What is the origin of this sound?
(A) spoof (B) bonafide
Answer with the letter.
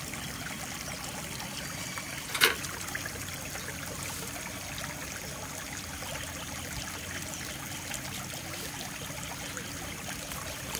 B